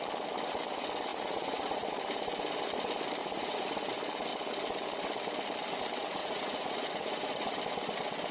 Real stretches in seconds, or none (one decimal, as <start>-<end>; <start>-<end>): 0.0-1.1; 1.9-3.2; 3.9-6.2; 7.6-8.3